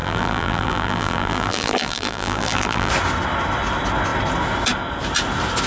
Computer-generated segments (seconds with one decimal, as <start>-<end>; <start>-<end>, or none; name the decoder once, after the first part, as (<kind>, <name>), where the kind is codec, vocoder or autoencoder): 0.0-2.9 (vocoder, BigVGAN v2)